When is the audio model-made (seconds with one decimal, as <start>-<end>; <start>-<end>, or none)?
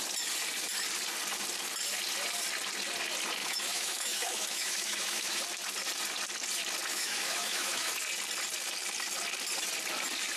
3.4-5.4; 6.9-7.9